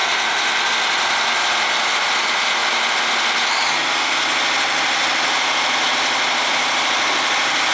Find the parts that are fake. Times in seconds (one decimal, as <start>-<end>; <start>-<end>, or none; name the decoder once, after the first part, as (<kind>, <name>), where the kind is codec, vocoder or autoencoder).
none